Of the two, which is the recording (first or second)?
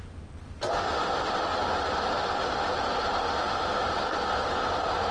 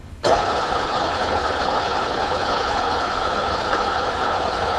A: first